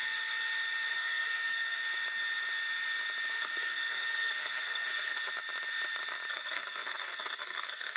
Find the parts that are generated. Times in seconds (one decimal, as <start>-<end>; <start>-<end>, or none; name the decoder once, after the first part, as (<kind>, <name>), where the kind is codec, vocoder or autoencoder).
0.9-1.8 (codec, SNAC); 3.3-5.3; 6.3-8.0